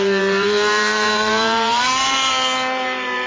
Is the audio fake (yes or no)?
yes